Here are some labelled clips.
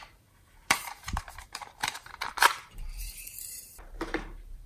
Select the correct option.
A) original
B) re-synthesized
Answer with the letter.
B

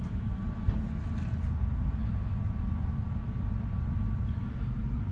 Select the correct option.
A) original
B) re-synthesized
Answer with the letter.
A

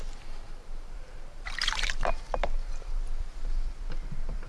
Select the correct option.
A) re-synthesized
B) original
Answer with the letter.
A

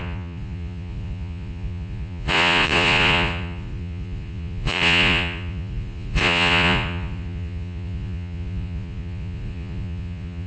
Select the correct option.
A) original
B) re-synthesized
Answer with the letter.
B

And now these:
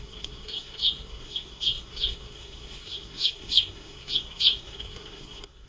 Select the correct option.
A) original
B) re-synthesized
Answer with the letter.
B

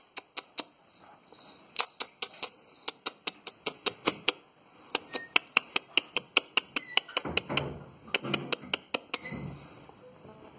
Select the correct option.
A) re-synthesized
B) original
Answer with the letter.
B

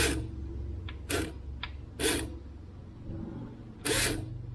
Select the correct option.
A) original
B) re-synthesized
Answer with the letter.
A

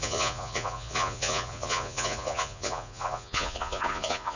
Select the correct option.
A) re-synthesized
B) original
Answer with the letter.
A